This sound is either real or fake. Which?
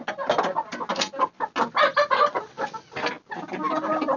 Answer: real